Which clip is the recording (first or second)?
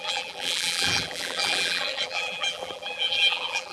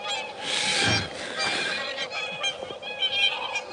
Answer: second